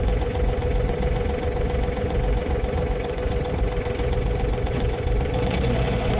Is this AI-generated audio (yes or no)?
yes